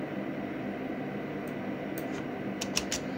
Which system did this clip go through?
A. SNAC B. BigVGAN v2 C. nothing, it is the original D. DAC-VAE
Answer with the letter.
C